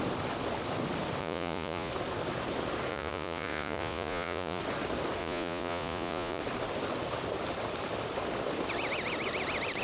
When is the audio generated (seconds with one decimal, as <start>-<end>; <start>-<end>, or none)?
1.2-1.9; 2.9-4.6; 5.2-6.4